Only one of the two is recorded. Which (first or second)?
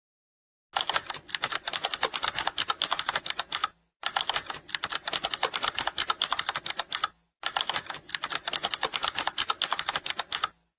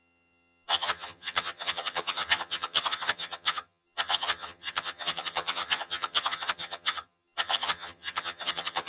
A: first